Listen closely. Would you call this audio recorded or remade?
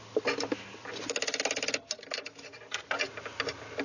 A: recorded